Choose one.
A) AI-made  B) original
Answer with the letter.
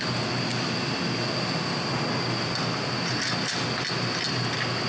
B